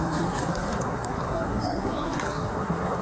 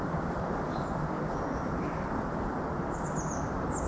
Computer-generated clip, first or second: first